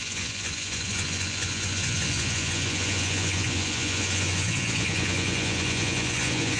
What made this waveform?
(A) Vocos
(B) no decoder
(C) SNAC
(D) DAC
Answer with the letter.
A